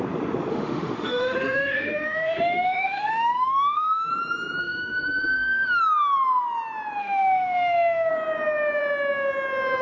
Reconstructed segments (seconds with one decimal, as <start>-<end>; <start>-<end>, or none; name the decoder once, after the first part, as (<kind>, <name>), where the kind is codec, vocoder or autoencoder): 0.5-4.1 (autoencoder, DAC-VAE); 4.6-5.8; 7.0-8.1